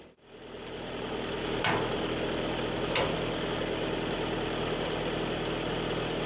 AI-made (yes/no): no